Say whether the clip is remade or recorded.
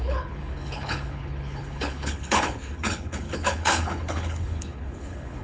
remade